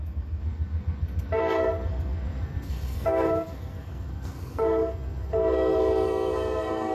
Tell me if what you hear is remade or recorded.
remade